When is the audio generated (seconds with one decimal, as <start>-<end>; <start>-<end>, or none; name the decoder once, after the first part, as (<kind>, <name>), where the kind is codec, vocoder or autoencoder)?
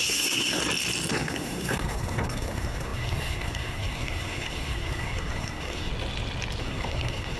0.0-0.6 (codec, SNAC); 1.1-5.9; 6.6-7.4